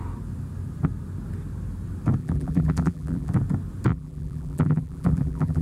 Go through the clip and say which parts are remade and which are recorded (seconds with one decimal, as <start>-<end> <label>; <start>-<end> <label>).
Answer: 0.0-2.2 recorded; 2.2-3.3 remade; 3.3-3.9 recorded; 3.9-5.6 remade